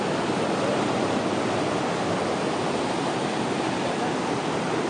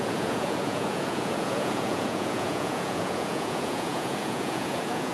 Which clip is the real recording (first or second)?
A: first